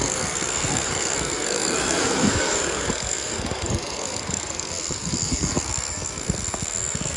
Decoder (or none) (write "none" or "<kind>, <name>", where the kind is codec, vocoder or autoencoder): codec, SNAC